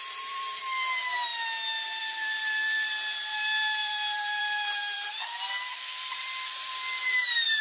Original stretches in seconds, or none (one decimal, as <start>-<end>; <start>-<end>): 1.3-2.0

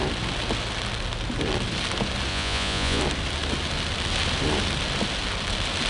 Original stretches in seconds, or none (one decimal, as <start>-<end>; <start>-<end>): 0.0-2.3; 3.0-5.9

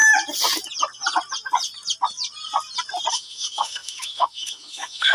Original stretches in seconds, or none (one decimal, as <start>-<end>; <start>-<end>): 0.0-3.1

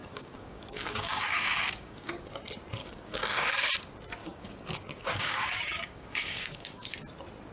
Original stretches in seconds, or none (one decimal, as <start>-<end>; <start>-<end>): 2.4-2.8; 3.7-4.2; 6.9-7.5

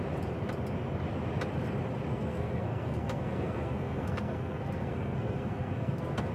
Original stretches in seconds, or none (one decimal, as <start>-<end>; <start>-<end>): 0.0-2.1

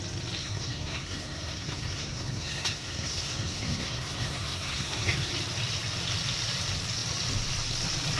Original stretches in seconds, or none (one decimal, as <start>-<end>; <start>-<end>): 0.0-0.4; 5.3-8.2